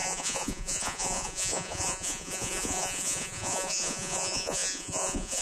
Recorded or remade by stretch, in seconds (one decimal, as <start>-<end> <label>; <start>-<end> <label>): 0.0-5.4 remade